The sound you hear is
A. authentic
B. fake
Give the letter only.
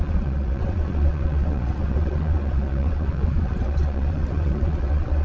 B